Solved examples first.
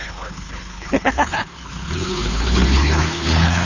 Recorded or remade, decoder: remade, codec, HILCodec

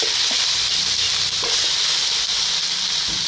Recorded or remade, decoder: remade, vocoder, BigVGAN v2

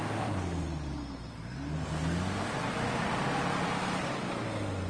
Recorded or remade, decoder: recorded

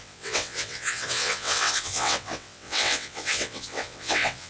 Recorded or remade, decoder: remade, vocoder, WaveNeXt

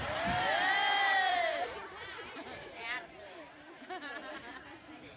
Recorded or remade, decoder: remade, vocoder, BigVGAN v2